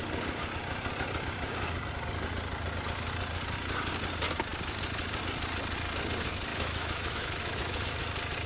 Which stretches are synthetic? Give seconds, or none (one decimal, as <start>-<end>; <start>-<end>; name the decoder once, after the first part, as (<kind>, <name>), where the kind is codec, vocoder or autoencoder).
6.5-7.8 (autoencoder, DAC-VAE)